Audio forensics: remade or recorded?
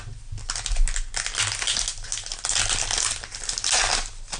recorded